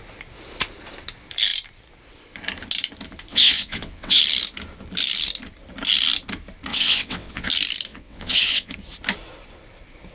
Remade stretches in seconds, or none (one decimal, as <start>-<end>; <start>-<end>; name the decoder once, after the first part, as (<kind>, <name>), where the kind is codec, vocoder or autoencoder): 3.3-4.2 (vocoder, WaveNeXt); 6.7-7.5; 7.9-8.7